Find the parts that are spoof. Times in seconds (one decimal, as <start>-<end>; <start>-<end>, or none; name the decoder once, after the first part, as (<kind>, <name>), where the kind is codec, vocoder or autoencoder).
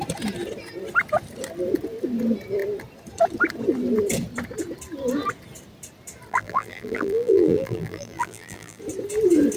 6.3-8.8 (vocoder, BigVGAN v2)